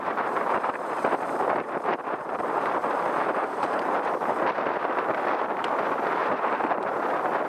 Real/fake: fake